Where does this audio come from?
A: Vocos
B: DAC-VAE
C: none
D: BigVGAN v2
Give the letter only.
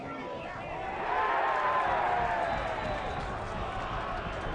C